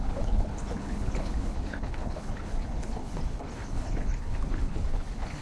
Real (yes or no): no